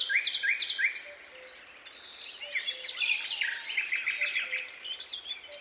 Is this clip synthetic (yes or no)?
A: no